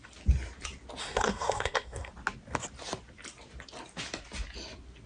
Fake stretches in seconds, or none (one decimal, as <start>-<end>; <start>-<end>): 1.0-2.1

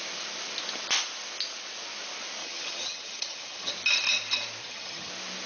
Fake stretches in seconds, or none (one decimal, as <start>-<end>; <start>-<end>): 2.4-3.7; 4.6-5.1